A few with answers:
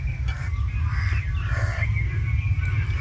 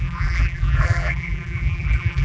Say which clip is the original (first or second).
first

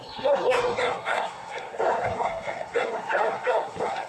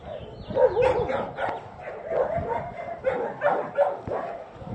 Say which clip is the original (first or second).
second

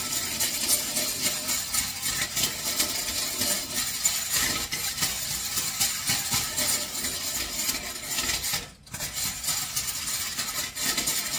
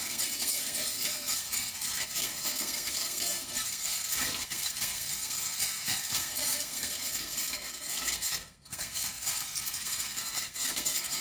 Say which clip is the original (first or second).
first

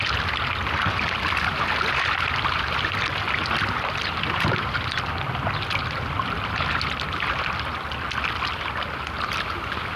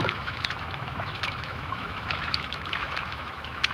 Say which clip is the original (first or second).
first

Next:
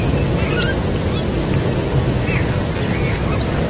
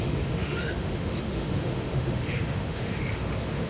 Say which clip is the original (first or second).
first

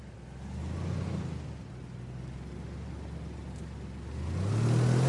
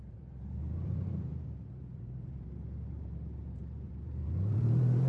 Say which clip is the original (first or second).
first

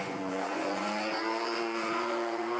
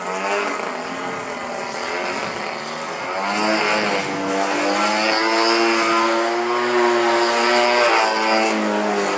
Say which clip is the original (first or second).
second